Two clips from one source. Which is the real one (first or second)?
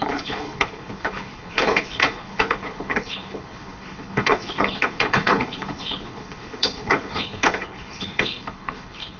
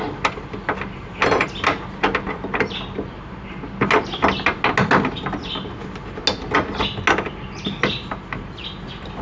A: second